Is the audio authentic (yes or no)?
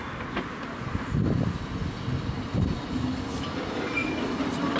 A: yes